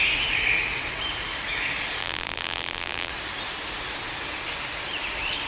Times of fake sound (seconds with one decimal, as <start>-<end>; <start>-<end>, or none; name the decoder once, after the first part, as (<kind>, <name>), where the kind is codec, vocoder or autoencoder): 2.0-3.1 (vocoder, BigVGAN v2)